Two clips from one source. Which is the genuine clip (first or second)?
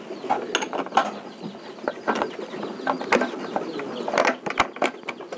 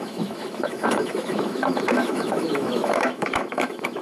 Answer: first